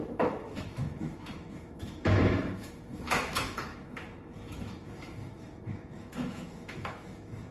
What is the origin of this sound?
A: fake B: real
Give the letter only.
A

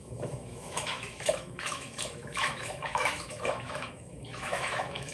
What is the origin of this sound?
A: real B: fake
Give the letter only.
B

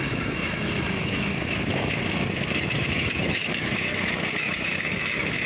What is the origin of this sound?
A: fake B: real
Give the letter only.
A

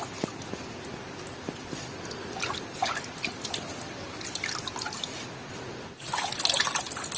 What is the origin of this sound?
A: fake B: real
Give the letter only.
B